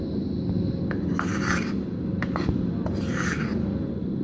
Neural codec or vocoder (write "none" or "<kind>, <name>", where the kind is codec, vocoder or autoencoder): none